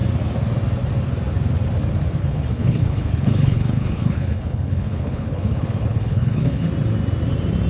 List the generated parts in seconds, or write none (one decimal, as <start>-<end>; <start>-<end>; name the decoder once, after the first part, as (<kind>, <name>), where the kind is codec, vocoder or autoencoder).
2.2-6.7 (codec, HILCodec)